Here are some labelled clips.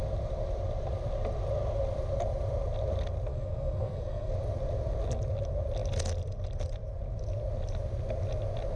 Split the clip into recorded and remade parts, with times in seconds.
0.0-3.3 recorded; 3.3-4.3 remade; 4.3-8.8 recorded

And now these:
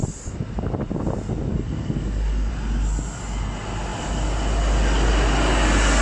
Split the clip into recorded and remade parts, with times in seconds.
0.0-1.5 recorded; 1.5-2.5 remade; 2.5-6.0 recorded

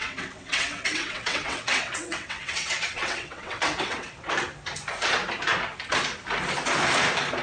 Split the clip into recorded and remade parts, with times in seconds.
0.0-4.3 remade; 4.3-7.4 recorded

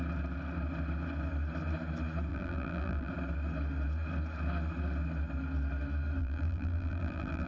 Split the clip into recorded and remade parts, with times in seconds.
0.0-2.3 recorded; 2.3-3.1 remade; 3.1-6.2 recorded; 6.2-7.5 remade